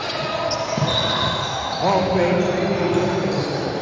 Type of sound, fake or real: real